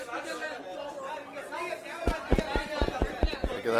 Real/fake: real